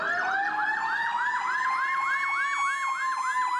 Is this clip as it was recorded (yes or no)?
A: yes